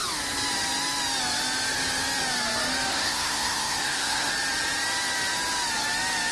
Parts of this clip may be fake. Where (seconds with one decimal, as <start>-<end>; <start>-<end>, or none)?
2.9-4.3